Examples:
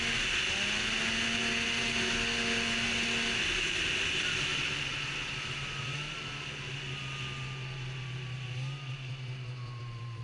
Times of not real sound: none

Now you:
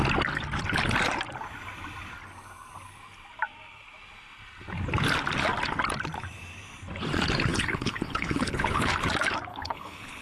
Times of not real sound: 7.5-8.9; 9.5-10.2

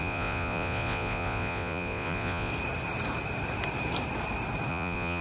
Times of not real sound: 0.0-2.5; 4.7-5.2

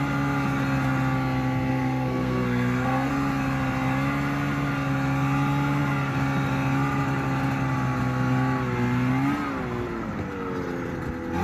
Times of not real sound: 1.7-3.1

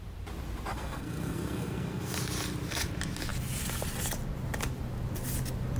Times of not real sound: 0.7-2.1